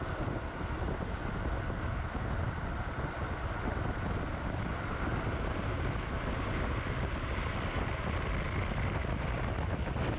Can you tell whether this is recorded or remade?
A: recorded